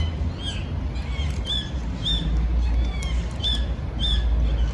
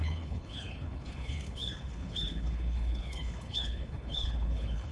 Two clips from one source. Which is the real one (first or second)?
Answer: first